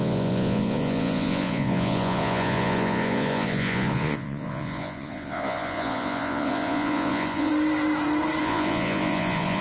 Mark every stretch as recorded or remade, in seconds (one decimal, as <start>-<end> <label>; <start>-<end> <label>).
0.0-7.5 remade; 7.5-8.4 recorded; 8.4-9.6 remade